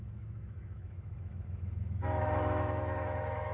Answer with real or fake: fake